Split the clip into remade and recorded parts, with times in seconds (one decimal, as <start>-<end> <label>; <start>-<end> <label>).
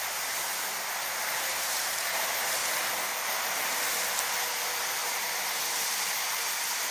0.0-2.6 remade; 2.6-3.2 recorded; 3.2-6.9 remade